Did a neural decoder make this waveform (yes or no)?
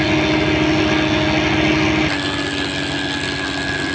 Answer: no